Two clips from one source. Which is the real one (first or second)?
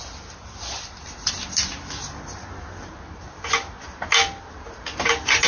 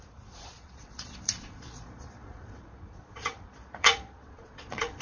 first